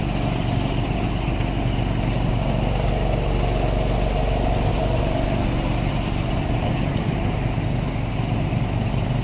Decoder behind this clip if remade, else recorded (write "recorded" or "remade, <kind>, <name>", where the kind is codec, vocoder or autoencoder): recorded